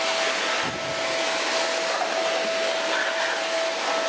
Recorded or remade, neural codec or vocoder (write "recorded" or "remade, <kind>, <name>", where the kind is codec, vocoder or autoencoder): recorded